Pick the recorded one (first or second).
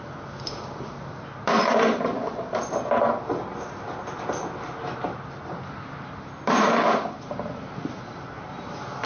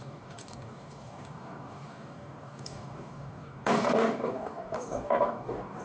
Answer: first